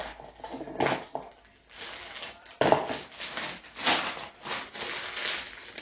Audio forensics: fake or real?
real